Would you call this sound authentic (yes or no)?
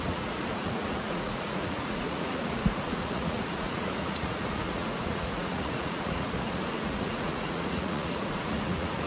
no